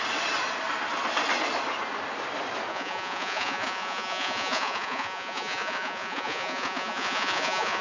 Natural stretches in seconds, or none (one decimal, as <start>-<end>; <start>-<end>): 0.0-2.7

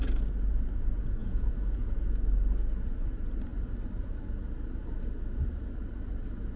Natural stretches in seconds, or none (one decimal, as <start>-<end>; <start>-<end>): 0.0-1.2; 2.1-6.6

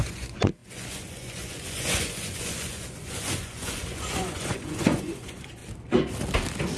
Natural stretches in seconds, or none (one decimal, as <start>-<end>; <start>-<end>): 5.6-6.8

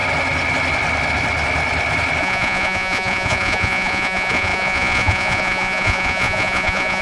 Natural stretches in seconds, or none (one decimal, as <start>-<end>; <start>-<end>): 0.0-2.2